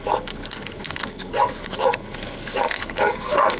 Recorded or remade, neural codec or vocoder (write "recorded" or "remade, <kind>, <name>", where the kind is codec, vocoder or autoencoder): remade, codec, SNAC